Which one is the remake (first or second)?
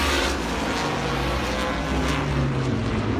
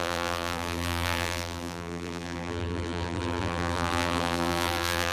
second